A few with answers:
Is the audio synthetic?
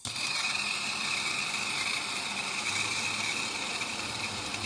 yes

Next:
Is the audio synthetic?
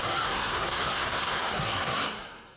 yes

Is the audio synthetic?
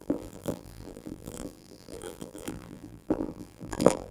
yes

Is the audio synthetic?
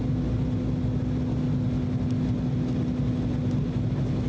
no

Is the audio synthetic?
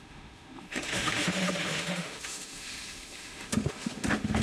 yes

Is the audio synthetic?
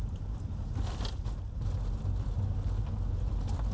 no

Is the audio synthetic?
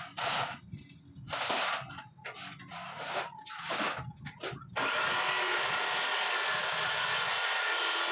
no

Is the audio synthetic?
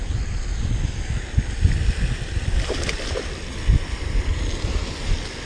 no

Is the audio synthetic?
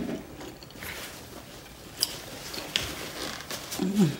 no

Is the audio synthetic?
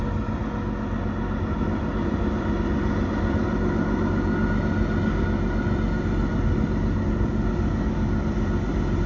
no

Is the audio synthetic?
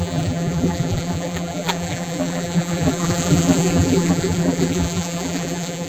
yes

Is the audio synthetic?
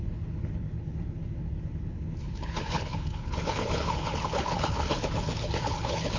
yes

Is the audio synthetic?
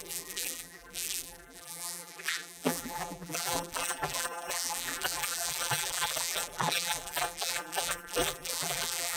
yes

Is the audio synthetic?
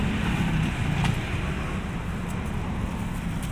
no